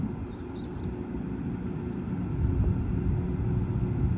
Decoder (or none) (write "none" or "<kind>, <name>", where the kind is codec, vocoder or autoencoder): none